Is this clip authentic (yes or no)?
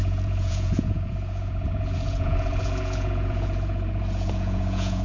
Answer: no